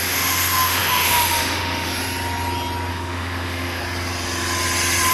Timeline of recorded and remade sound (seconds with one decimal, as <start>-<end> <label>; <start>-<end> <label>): 0.0-1.9 remade; 1.9-2.9 recorded; 2.9-3.8 remade; 3.8-5.1 recorded

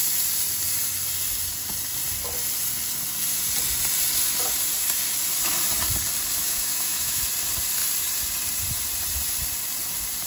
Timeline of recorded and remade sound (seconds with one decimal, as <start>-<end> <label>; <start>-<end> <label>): 0.0-6.4 recorded; 6.4-7.2 remade; 7.2-10.3 recorded

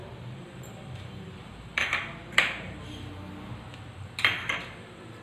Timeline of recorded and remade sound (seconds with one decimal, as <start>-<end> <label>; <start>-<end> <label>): 0.0-3.1 remade; 3.1-5.2 recorded

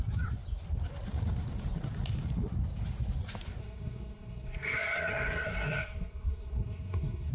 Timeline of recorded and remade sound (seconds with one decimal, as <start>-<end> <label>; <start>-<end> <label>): 0.0-3.6 recorded; 3.6-7.3 remade

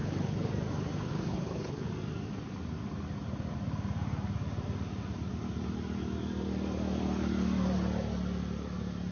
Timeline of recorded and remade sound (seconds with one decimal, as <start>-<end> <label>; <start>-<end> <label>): 0.0-0.5 remade; 0.5-1.1 recorded; 1.1-1.9 remade; 1.9-9.1 recorded

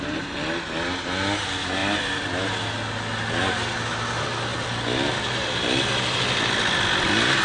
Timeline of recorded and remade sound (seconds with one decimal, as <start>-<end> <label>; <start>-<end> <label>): 0.0-7.4 recorded

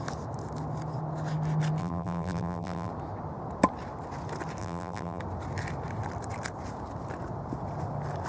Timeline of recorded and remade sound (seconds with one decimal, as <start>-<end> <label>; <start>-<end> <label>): 0.0-1.8 recorded; 1.8-2.9 remade; 2.9-4.6 recorded; 4.6-5.2 remade; 5.2-8.3 recorded

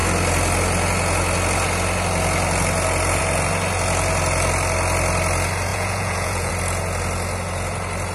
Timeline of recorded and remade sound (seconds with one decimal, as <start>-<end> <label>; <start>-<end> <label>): 0.0-5.7 recorded; 5.7-6.5 remade; 6.5-8.1 recorded